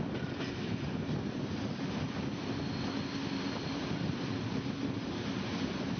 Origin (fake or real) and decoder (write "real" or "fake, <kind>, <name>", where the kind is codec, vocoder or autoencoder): real